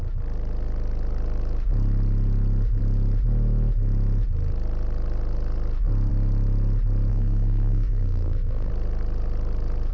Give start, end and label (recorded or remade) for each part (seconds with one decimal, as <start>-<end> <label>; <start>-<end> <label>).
0.0-7.1 recorded; 7.1-8.7 remade; 8.7-9.9 recorded